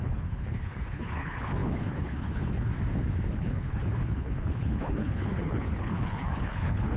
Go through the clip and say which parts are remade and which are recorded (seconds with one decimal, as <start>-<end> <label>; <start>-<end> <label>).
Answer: 0.0-2.7 remade; 2.7-3.3 recorded; 3.3-7.0 remade